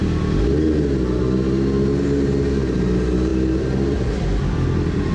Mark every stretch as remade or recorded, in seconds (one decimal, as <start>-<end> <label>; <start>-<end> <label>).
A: 0.0-3.3 recorded; 3.3-4.4 remade; 4.4-5.1 recorded